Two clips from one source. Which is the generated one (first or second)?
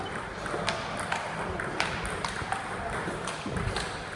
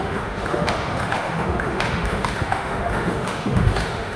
second